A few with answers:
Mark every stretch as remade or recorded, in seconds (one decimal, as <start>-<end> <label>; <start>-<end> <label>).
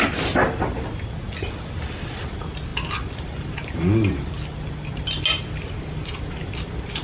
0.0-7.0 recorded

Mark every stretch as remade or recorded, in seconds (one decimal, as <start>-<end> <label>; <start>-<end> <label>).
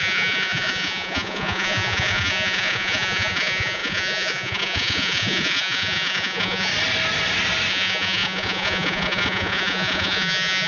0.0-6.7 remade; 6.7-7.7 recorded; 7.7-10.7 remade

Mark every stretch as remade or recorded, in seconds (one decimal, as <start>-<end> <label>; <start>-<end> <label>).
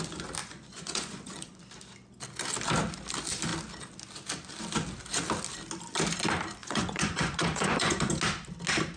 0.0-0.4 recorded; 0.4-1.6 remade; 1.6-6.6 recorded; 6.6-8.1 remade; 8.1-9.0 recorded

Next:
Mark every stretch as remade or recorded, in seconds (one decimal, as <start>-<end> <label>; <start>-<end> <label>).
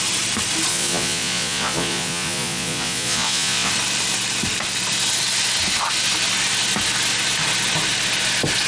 0.0-0.7 recorded; 0.7-3.7 remade; 3.7-8.7 recorded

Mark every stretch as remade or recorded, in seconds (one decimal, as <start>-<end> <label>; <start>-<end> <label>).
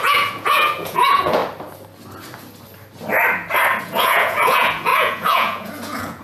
0.0-1.4 remade; 1.4-3.8 recorded; 3.8-6.2 remade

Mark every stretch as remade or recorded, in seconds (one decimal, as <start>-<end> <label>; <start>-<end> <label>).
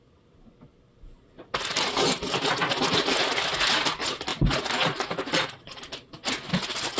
0.0-7.0 recorded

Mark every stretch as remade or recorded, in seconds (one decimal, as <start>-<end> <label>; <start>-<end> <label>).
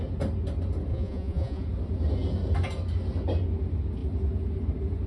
0.0-0.9 recorded; 0.9-1.6 remade; 1.6-5.1 recorded